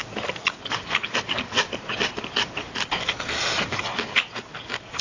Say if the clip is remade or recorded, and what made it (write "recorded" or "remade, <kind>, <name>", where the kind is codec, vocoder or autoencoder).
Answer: recorded